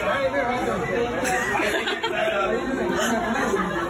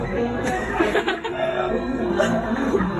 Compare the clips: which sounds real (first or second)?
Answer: first